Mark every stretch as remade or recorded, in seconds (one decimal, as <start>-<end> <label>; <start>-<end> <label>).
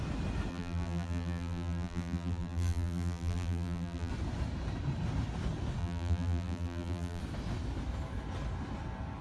0.0-0.5 recorded; 0.5-4.1 remade; 4.1-5.8 recorded; 5.8-7.2 remade; 7.2-9.2 recorded